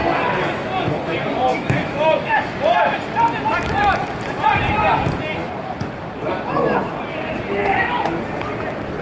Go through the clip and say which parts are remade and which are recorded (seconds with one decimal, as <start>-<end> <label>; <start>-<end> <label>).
0.0-1.5 recorded; 1.5-2.4 remade; 2.4-9.0 recorded